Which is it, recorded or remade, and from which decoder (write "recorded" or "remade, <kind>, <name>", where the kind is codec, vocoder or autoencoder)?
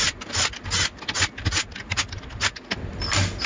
recorded